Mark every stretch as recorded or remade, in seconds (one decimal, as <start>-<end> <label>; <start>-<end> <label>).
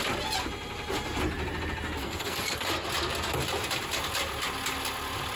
0.0-2.0 recorded; 2.0-2.7 remade; 2.7-5.4 recorded